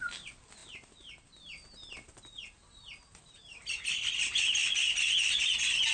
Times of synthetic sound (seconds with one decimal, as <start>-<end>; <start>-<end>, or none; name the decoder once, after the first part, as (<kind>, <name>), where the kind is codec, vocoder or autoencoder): none